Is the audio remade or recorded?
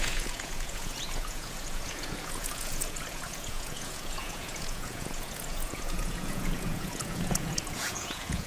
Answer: remade